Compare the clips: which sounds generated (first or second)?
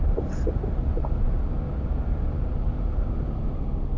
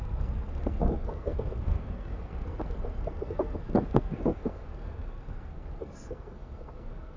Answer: second